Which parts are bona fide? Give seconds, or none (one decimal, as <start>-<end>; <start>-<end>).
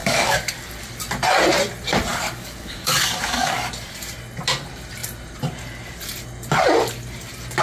0.5-2.1; 3.7-7.6